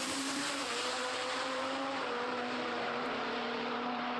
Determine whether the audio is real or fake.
fake